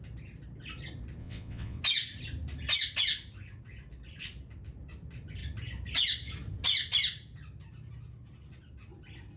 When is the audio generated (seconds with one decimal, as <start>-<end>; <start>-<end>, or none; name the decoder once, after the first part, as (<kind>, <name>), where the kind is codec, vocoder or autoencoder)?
1.2-1.8 (vocoder, WaveNeXt)